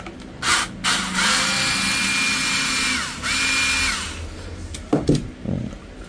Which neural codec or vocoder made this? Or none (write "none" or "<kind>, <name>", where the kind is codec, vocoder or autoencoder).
none